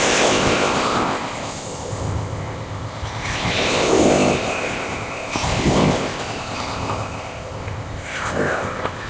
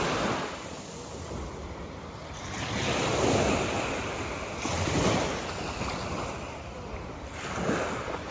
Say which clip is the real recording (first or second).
second